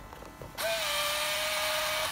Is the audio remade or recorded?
recorded